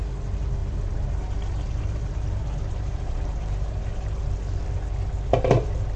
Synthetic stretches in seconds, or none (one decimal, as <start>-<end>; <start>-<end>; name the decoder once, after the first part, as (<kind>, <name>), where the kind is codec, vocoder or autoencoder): 0.6-4.2 (vocoder, BigVGAN v2)